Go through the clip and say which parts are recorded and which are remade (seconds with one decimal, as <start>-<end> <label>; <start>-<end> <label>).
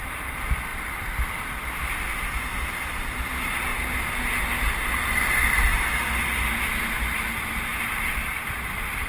0.0-3.7 recorded; 3.7-4.4 remade; 4.4-5.7 recorded; 5.7-9.1 remade